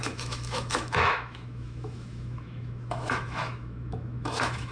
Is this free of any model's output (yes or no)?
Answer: no